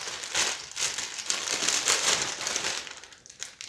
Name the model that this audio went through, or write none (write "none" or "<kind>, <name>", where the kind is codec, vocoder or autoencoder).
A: none